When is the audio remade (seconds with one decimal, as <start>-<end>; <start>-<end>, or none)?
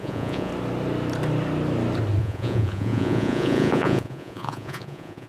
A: 0.0-0.5; 2.2-5.3